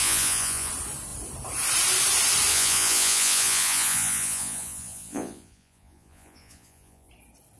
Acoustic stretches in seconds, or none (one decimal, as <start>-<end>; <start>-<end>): 0.7-2.5; 7.1-7.6

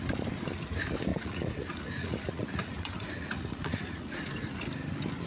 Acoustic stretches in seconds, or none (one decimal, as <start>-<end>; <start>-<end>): 0.0-1.1; 4.3-5.3